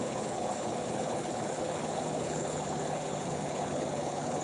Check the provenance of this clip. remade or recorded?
remade